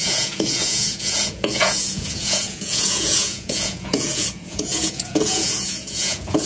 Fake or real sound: fake